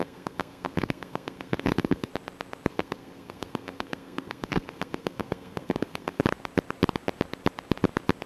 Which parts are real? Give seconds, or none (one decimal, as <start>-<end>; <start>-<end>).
2.1-2.7; 6.2-8.3